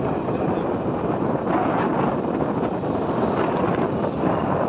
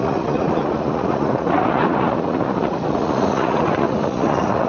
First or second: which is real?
first